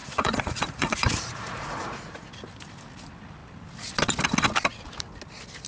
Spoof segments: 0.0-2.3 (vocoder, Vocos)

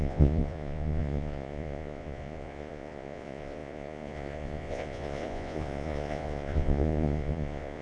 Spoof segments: 0.0-7.8 (vocoder, Vocos)

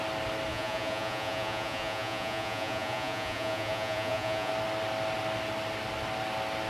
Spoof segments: 0.5-4.5 (vocoder, Vocos)

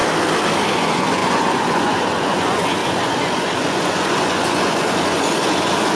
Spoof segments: 0.7-5.9 (vocoder, Vocos)

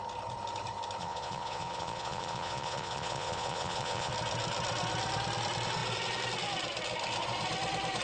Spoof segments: 1.0-4.1 (vocoder, Vocos)

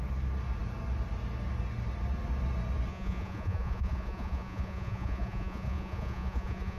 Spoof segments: 2.9-6.8 (vocoder, Vocos)

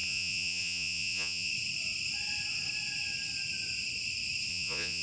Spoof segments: 0.0-1.5 (vocoder, Vocos); 4.5-5.0